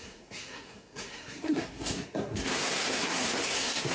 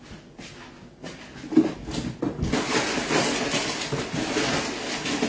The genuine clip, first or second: second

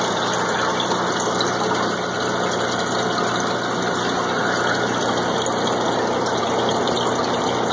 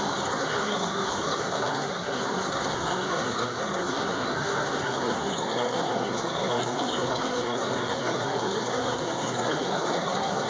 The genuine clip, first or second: first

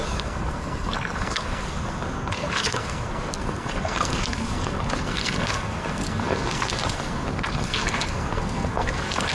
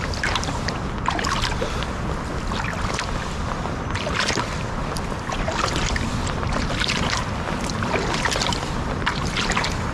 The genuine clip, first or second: second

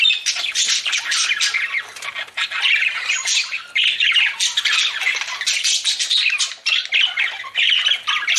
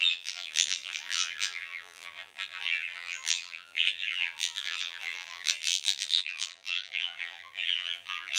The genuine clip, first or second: first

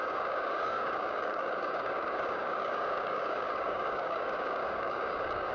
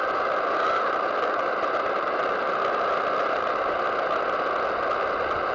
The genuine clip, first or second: second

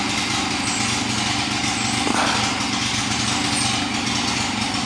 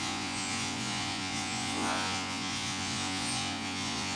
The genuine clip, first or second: first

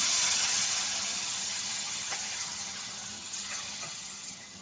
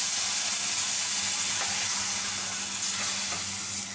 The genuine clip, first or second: second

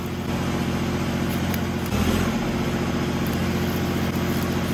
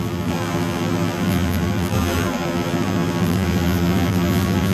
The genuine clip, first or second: first